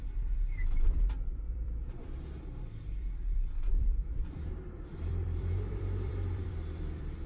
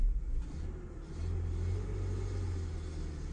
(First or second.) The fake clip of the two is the first